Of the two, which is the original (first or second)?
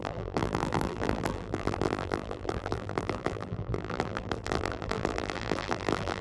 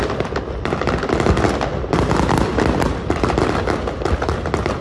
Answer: second